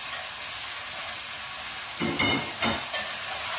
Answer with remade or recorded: recorded